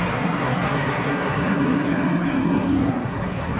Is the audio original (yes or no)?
no